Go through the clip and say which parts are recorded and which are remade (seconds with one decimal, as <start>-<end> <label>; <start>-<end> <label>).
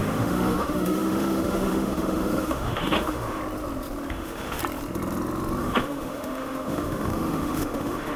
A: 0.0-3.4 remade; 3.4-4.1 recorded; 4.1-4.6 remade; 4.6-5.6 recorded; 5.6-8.2 remade